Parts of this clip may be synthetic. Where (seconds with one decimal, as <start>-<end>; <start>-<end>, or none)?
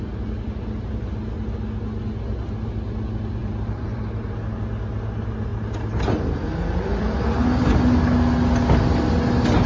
3.4-4.0